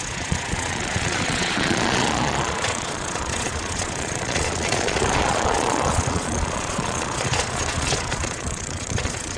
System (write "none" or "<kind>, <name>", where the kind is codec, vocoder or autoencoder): vocoder, Vocos